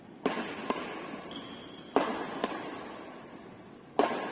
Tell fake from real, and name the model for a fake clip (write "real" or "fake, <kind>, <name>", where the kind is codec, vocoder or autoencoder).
real